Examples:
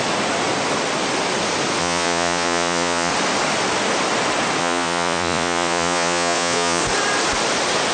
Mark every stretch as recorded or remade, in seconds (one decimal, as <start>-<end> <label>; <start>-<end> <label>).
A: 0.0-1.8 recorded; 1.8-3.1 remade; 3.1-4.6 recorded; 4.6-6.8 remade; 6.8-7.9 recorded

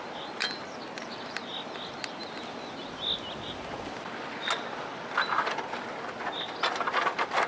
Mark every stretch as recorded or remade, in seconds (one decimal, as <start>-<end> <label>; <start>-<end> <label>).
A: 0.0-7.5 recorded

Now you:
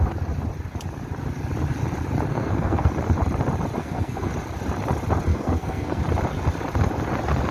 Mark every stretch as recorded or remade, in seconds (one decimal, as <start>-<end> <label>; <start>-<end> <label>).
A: 0.0-2.3 recorded; 2.3-2.9 remade; 2.9-3.8 recorded; 3.8-4.3 remade; 4.3-5.3 recorded; 5.3-6.0 remade; 6.0-7.5 recorded

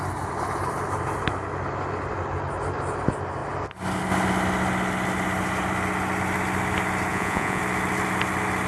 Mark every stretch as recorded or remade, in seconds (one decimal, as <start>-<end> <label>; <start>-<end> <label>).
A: 0.0-7.1 recorded; 7.1-7.6 remade; 7.6-8.7 recorded

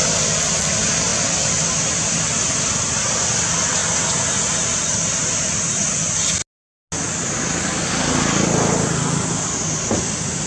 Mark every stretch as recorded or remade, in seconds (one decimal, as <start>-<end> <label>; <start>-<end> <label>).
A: 0.0-10.5 recorded

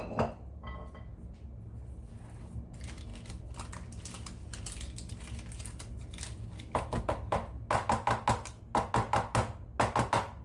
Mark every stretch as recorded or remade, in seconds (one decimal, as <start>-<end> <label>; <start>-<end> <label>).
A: 0.0-10.4 recorded